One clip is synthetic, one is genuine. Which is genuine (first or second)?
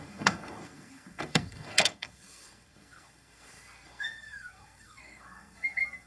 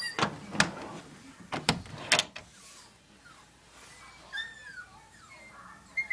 second